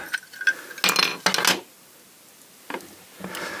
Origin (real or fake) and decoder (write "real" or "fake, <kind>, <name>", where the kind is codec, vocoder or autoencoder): real